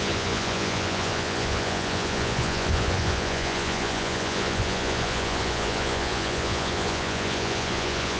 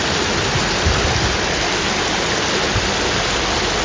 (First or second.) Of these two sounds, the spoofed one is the first